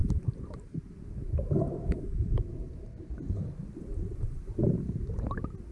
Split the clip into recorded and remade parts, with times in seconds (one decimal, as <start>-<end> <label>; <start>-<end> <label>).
0.0-3.4 remade; 3.4-4.1 recorded; 4.1-5.3 remade; 5.3-5.7 recorded